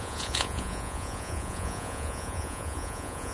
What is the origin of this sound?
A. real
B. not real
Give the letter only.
B